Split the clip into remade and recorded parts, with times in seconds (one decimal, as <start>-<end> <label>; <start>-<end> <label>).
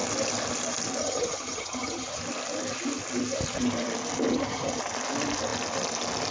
0.0-1.0 recorded; 1.0-2.2 remade; 2.2-4.3 recorded; 4.3-4.8 remade; 4.8-6.3 recorded